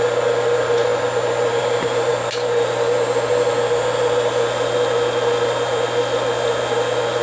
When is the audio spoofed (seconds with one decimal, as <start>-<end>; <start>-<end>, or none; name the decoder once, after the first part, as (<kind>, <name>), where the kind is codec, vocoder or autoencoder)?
none